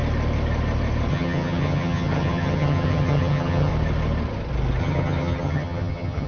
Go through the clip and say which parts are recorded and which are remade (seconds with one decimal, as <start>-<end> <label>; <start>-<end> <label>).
0.0-1.1 recorded; 1.1-3.7 remade; 3.7-4.8 recorded; 4.8-6.3 remade